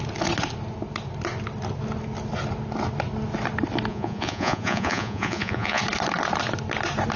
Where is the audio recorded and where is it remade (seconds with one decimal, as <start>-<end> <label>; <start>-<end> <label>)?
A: 0.0-3.9 recorded; 3.9-5.8 remade; 5.8-7.2 recorded